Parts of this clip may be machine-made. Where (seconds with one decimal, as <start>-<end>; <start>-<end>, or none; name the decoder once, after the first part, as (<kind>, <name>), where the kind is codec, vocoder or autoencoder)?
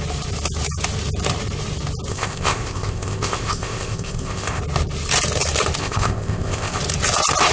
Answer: 2.1-4.6 (codec, ZipCodec); 5.8-6.8